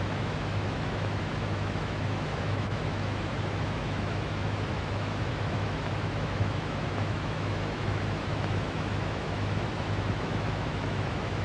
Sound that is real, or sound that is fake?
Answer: fake